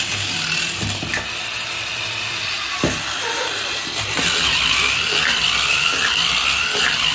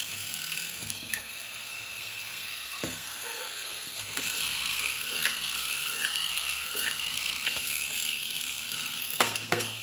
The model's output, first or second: second